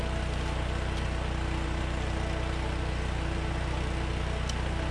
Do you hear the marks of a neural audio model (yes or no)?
no